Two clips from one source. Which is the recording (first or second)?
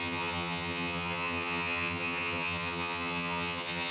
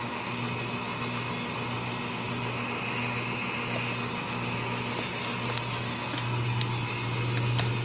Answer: second